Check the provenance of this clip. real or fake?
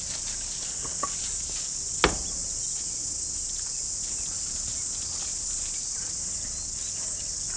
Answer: real